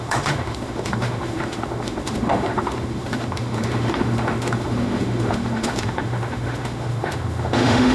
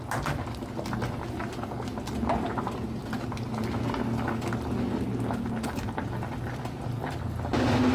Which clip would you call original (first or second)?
second